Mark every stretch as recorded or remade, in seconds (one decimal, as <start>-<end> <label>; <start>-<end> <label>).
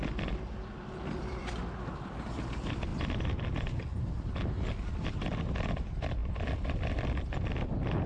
0.0-1.0 recorded; 1.0-1.6 remade; 1.6-8.1 recorded